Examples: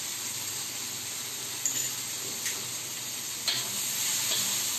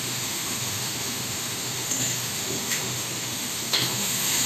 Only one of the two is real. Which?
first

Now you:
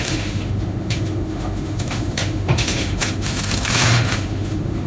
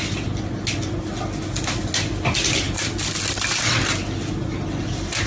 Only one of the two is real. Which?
second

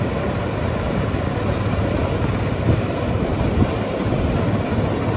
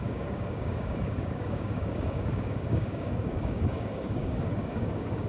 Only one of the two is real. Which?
first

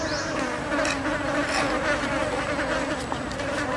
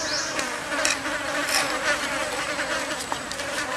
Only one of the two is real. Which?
first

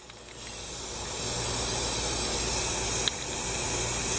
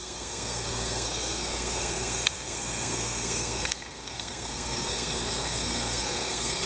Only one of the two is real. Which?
first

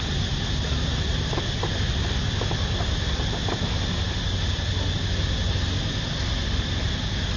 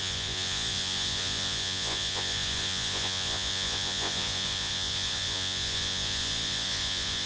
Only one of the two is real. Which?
first